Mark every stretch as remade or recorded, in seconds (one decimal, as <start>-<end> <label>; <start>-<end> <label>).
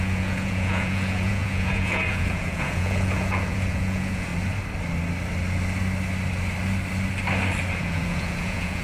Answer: 0.0-4.3 remade; 4.3-7.8 recorded; 7.8-8.8 remade